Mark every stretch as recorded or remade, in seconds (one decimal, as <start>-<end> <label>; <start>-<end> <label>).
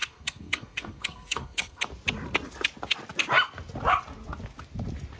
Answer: 0.0-1.8 remade; 1.8-5.2 recorded